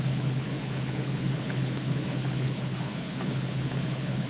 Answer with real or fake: fake